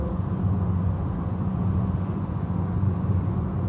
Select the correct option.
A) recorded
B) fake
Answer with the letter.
B